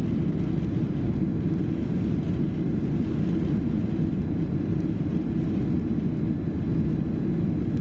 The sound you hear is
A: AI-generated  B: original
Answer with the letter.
B